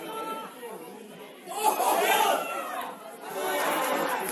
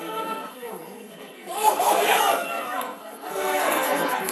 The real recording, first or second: first